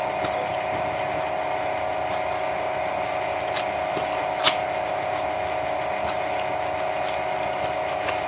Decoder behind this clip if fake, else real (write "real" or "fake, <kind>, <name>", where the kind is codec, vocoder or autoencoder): real